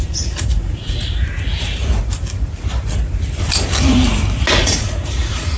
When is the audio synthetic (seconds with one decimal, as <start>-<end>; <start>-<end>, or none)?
0.0-1.2; 4.6-5.6